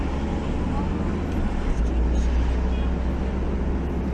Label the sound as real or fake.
real